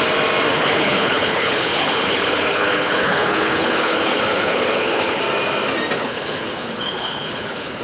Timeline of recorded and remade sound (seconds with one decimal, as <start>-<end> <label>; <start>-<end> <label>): 0.0-0.5 recorded; 0.5-5.2 remade; 5.2-6.0 recorded; 6.0-7.8 remade